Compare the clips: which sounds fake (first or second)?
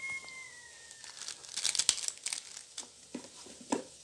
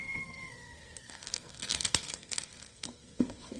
second